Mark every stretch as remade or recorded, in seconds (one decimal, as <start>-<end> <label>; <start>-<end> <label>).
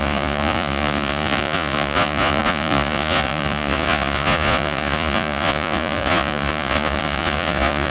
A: 0.0-7.9 remade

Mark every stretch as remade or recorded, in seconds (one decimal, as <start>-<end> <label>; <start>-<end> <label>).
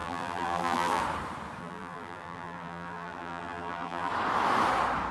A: 0.0-1.0 remade; 1.0-1.6 recorded; 1.6-4.1 remade; 4.1-5.1 recorded